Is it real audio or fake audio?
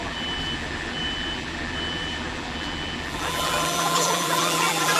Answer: fake